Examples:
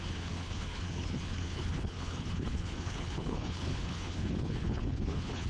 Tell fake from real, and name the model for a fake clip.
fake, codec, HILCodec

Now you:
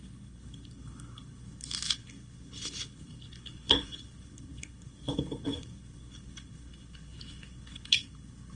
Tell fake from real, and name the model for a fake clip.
fake, codec, HILCodec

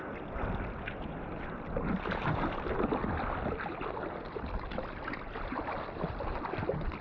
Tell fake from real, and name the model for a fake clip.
real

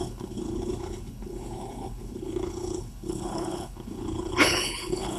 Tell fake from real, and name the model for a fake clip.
fake, codec, HILCodec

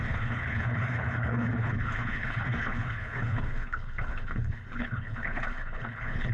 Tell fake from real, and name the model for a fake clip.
fake, codec, HILCodec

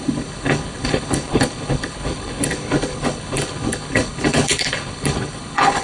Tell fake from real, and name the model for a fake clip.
fake, codec, HILCodec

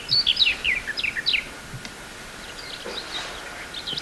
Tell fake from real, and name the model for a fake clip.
real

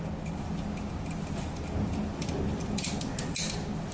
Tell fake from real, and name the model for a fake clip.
real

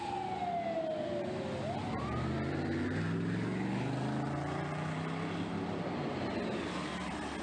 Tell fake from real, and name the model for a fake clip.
real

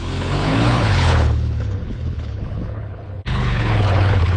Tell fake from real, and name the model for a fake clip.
fake, codec, HILCodec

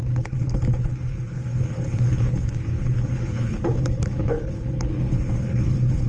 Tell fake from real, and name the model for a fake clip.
fake, codec, HILCodec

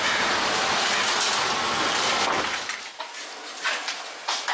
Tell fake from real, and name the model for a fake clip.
real